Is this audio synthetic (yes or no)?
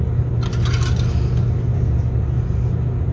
no